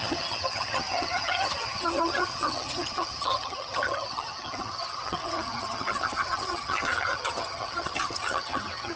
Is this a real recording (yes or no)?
no